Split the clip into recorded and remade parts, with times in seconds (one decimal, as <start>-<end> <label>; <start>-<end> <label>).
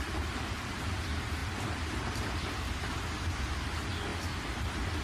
0.0-4.1 remade; 4.1-5.0 recorded